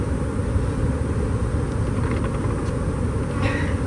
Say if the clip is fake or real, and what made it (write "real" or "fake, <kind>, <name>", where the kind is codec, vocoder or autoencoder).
real